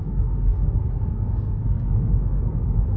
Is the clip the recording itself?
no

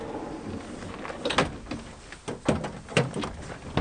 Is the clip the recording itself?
yes